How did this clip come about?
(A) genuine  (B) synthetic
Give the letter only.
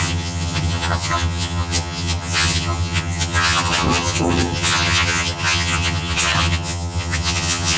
B